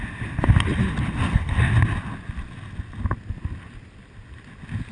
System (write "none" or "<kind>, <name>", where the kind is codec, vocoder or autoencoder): none